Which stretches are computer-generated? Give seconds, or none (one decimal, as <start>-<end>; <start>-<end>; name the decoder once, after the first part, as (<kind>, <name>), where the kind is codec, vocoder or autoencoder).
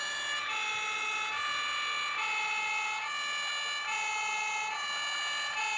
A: none